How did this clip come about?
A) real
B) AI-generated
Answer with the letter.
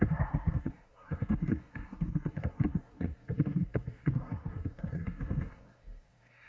B